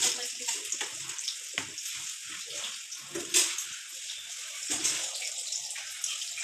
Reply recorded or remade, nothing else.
recorded